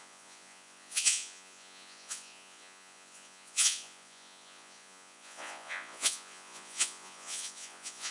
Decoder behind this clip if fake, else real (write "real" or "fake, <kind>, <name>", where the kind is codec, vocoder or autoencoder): fake, vocoder, Vocos